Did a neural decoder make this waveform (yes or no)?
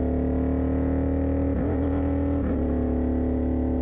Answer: no